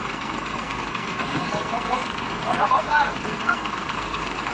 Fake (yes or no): yes